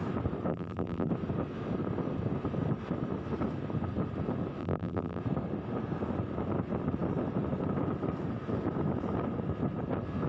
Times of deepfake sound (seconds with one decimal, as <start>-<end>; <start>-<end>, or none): 0.5-1.1; 4.6-5.2